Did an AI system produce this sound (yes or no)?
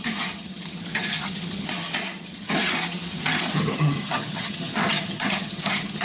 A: yes